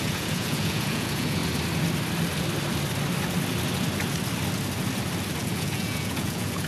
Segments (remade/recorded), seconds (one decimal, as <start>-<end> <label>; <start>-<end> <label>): 0.0-1.4 remade; 1.4-5.4 recorded; 5.4-6.7 remade